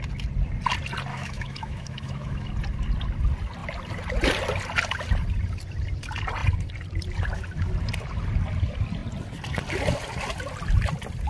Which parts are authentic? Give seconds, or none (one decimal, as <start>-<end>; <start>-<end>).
0.0-1.1; 2.5-11.3

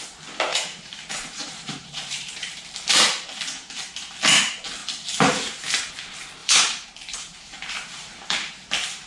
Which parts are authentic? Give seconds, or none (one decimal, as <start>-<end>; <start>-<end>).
0.0-0.5; 2.6-4.8; 5.9-6.4; 8.5-9.1

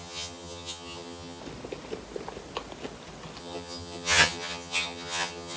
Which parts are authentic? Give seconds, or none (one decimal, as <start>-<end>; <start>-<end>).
1.4-3.4

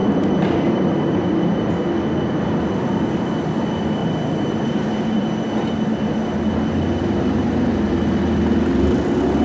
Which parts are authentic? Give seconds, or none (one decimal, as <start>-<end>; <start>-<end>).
1.7-4.0; 5.3-7.0; 7.9-9.4

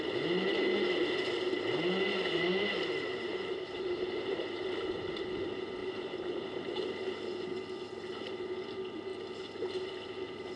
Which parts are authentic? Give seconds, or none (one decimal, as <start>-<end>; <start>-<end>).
0.0-3.3; 4.4-5.8; 7.0-10.6

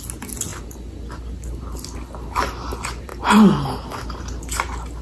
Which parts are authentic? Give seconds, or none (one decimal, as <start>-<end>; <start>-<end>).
0.0-5.0